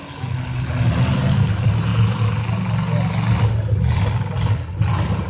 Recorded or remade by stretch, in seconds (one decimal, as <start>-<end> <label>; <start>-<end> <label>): 0.0-5.3 recorded